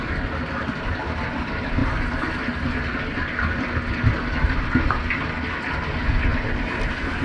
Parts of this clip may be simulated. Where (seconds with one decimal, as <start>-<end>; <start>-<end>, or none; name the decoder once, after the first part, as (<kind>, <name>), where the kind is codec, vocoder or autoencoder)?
none